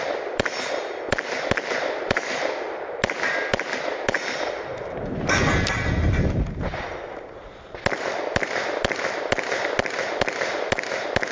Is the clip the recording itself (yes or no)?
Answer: yes